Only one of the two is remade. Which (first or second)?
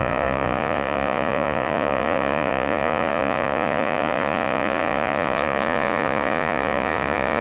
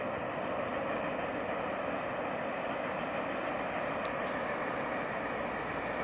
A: first